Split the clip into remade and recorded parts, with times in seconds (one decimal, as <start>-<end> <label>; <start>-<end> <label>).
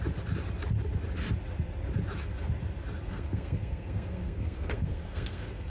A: 0.0-3.1 recorded; 3.1-5.7 remade